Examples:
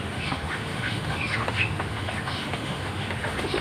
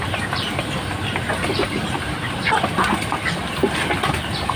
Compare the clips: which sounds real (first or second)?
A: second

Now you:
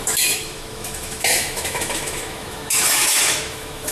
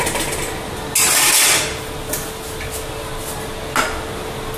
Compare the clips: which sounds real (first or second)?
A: second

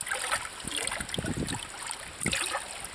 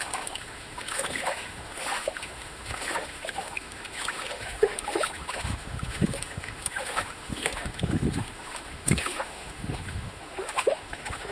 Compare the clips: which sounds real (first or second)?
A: first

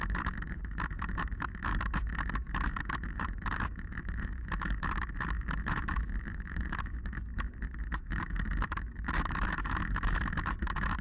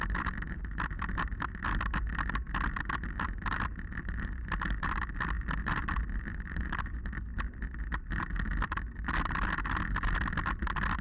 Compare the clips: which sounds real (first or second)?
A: second